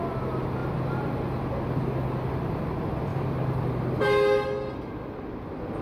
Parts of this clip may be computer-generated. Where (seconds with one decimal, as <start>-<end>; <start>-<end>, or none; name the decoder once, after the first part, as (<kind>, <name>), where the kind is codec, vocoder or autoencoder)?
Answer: 3.1-4.0 (vocoder, BigVGAN v2)